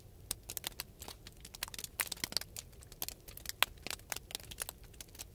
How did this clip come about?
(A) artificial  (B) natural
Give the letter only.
B